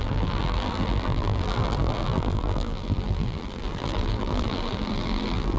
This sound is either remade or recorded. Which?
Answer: remade